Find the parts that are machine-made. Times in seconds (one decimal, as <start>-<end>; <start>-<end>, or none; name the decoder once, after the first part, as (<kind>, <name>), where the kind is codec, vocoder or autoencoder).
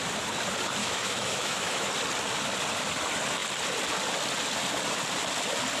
0.8-1.9 (autoencoder, DAC-VAE)